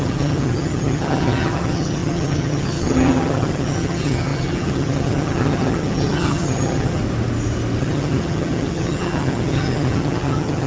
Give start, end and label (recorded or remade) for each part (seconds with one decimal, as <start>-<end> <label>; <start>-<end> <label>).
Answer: 0.0-7.0 remade; 7.0-7.8 recorded; 7.8-10.7 remade